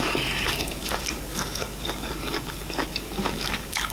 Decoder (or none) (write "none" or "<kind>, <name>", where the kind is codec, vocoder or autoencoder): codec, DAC